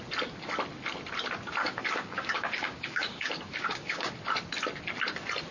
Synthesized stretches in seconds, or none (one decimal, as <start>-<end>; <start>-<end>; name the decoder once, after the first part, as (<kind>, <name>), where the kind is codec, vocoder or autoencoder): 1.6-4.1 (codec, DAC)